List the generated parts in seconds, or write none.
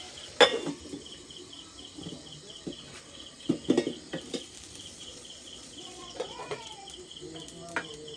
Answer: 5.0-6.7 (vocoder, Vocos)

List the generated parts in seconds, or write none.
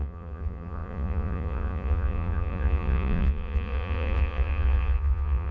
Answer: 0.0-5.5 (vocoder, Vocos)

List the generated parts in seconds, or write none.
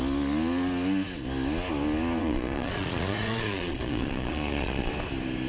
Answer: 2.2-4.9 (vocoder, Vocos)